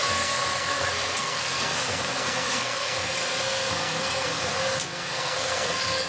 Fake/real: fake